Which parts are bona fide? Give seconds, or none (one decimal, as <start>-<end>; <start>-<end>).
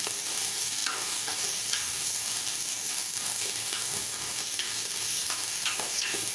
none